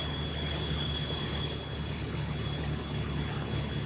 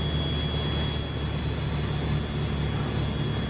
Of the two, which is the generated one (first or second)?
first